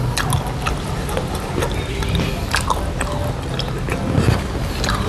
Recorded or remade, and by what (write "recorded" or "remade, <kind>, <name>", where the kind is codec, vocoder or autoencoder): recorded